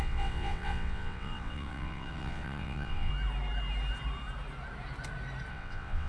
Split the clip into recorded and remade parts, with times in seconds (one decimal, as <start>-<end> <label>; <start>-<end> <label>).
0.0-3.1 remade; 3.1-5.5 recorded; 5.5-6.1 remade